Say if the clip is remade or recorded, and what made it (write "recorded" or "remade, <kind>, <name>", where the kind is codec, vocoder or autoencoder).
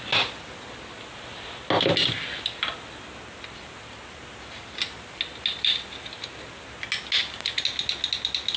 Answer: recorded